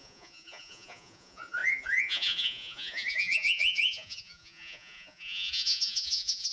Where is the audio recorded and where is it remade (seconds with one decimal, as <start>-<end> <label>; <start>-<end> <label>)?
0.0-6.5 remade